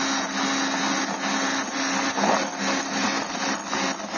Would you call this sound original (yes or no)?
yes